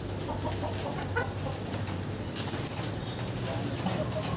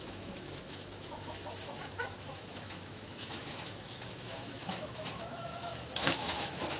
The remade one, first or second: second